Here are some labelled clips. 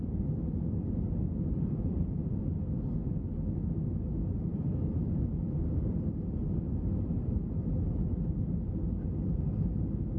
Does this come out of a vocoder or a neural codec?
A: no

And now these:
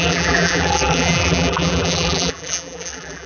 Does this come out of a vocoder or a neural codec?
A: yes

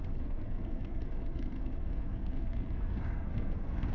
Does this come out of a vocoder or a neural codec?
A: yes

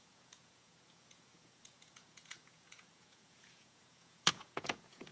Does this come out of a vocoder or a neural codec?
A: yes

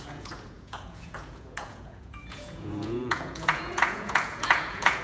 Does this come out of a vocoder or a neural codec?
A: yes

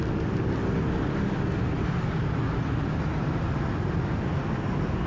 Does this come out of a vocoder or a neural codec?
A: no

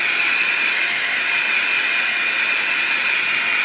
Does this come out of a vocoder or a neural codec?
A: no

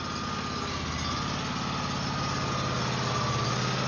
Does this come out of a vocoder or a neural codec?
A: no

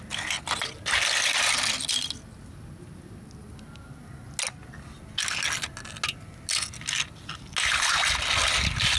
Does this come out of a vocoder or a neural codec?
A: no